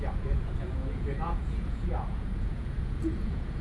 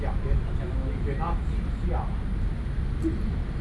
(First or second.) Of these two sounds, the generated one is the first